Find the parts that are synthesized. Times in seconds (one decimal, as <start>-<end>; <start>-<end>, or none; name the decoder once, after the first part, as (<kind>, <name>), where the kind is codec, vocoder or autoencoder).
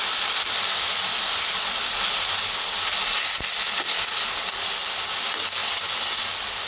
none